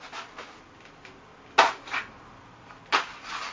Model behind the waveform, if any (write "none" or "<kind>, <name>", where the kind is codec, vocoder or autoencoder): none